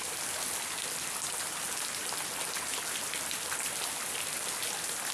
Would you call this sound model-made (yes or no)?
no